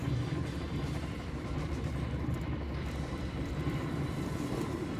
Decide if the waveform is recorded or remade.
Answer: remade